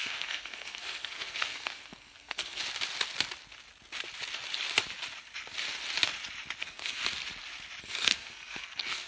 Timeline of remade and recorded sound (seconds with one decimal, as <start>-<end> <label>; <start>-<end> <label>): 0.0-2.6 remade; 2.6-6.6 recorded; 6.6-7.0 remade; 7.0-7.8 recorded; 7.8-9.1 remade